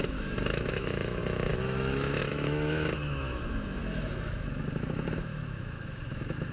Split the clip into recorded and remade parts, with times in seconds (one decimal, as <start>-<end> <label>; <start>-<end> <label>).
0.0-6.5 remade